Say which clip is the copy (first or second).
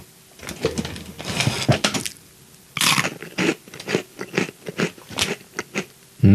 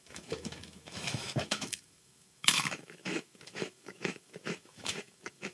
second